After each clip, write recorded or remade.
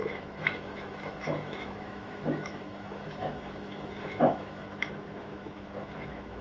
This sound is remade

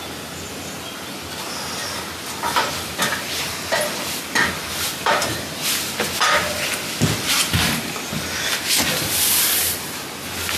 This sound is recorded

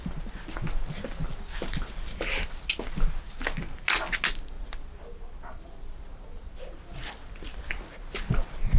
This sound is recorded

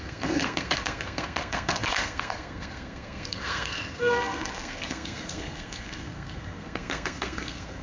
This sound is remade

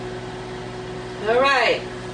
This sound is recorded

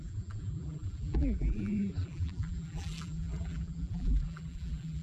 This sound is remade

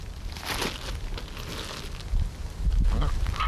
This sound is recorded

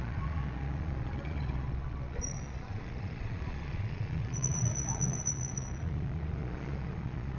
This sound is remade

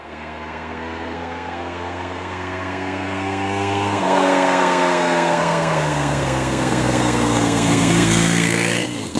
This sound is remade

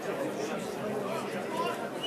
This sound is recorded